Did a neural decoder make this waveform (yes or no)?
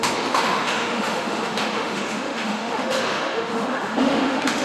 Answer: yes